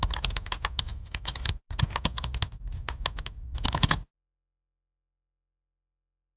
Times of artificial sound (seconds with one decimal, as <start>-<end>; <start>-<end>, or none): 0.9-1.5